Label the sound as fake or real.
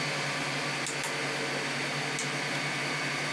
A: real